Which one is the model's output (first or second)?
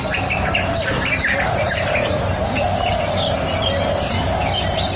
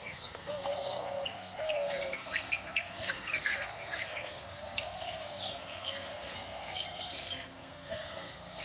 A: second